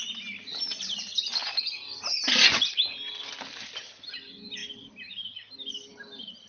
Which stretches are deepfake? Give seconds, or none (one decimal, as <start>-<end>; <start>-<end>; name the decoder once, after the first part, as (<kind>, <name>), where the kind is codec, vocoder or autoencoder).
none